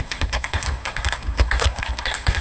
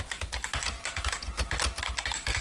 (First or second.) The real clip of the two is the second